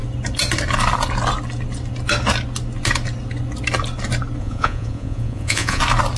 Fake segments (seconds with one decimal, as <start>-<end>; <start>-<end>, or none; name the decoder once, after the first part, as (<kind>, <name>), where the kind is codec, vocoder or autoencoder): 4.4-5.8 (vocoder, Vocos)